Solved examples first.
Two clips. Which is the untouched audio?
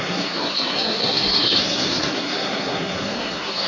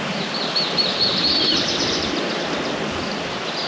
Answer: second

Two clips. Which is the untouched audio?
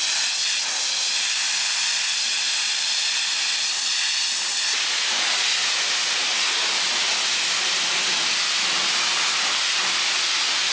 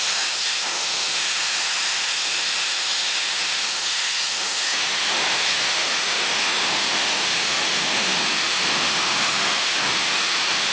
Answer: first